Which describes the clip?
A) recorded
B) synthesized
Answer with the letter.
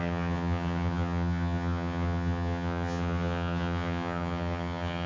B